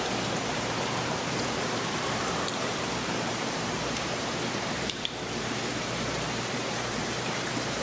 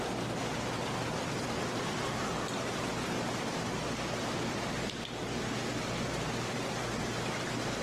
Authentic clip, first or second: second